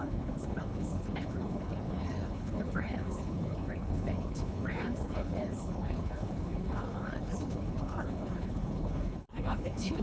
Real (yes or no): no